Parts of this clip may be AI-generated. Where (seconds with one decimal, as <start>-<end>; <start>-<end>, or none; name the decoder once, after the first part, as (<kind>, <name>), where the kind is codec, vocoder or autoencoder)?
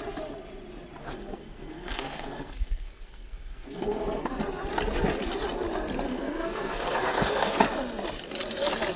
1.0-4.4 (codec, SNAC); 6.1-7.6